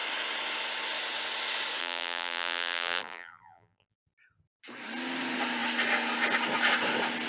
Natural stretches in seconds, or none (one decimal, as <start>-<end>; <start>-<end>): 0.0-1.8; 4.0-7.3